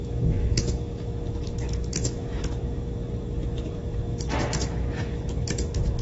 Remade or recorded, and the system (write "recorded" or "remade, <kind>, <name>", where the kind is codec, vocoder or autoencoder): remade, autoencoder, DAC-VAE